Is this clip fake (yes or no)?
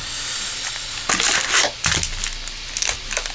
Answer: no